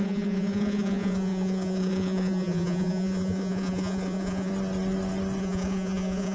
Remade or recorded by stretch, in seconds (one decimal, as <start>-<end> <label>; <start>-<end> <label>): 0.0-4.5 remade; 4.5-5.4 recorded; 5.4-6.3 remade